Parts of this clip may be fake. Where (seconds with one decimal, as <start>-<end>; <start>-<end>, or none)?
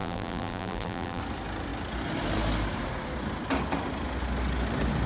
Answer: 0.0-1.2